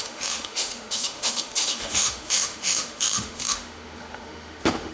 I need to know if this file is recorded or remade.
remade